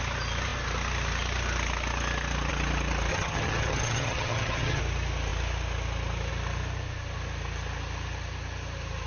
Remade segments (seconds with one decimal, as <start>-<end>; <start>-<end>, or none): 3.1-4.8